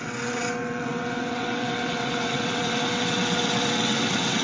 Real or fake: fake